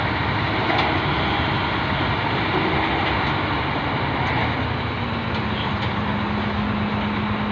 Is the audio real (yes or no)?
yes